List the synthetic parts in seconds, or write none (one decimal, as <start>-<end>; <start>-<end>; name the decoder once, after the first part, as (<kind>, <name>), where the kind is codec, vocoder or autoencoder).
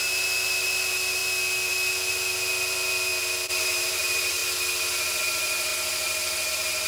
0.0-1.2 (vocoder, BigVGAN v2); 1.7-3.1; 3.6-4.4; 5.2-5.7; 6.5-6.9